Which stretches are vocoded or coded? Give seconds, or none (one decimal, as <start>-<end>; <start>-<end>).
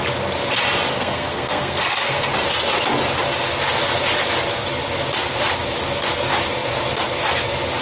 0.9-2.3